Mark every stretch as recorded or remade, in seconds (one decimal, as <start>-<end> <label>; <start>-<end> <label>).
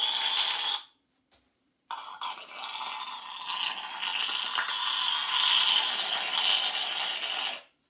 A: 0.0-7.9 recorded